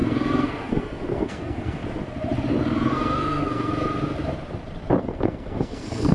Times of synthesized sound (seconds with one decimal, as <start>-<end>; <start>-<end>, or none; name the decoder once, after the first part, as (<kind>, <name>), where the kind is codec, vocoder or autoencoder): 0.0-1.8 (codec, SNAC); 2.9-3.7; 5.0-6.1